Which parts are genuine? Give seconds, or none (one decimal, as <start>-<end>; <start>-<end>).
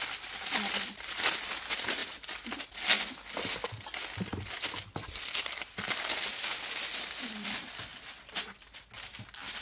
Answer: 0.0-9.6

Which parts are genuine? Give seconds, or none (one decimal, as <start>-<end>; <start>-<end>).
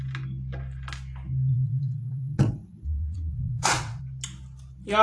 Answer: 0.0-1.5; 4.0-5.0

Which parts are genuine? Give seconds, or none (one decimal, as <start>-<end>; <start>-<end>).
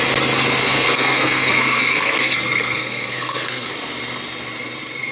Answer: 0.0-0.6; 3.7-5.1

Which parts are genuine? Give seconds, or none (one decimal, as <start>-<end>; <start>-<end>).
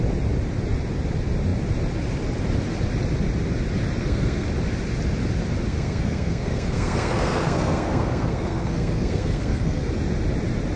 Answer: 0.0-4.0; 4.5-5.7; 9.9-10.8